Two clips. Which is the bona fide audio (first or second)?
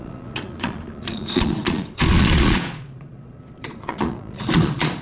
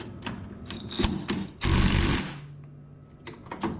second